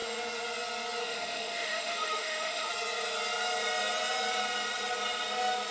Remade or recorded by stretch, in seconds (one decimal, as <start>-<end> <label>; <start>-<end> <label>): 0.0-1.0 recorded; 1.0-2.7 remade; 2.7-5.7 recorded